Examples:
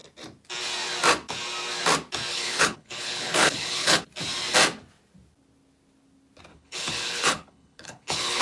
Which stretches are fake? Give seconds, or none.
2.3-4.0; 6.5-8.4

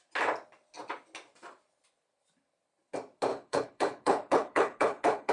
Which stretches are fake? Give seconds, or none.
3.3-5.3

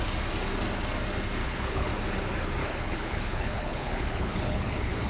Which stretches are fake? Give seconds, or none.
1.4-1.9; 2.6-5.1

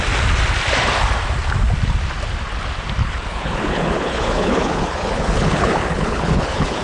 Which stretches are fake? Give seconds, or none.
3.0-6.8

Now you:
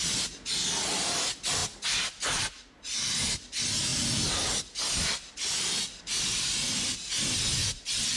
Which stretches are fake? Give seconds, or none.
none

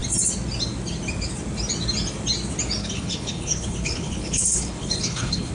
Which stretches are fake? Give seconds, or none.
2.8-5.5

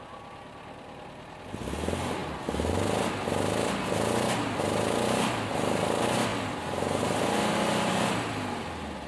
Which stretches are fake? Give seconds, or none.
none

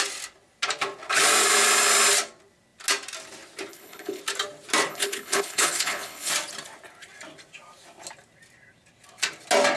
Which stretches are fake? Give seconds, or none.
3.7-4.2; 4.9-6.3